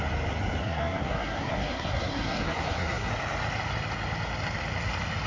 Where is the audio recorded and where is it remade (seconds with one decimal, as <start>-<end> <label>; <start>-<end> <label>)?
0.0-0.6 recorded; 0.6-3.1 remade; 3.1-5.3 recorded